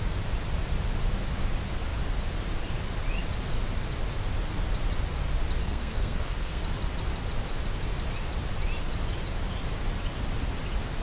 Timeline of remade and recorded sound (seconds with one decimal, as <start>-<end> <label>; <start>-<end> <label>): 0.0-5.6 recorded; 5.6-6.6 remade; 6.6-11.0 recorded